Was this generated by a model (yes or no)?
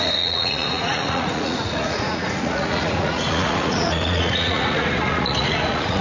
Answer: yes